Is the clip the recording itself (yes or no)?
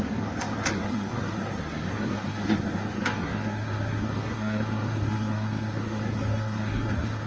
no